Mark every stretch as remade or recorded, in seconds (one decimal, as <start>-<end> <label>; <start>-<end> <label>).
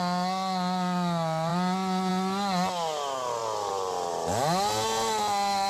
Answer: 0.0-5.7 recorded